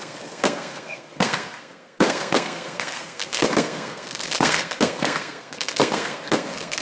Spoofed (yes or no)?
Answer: yes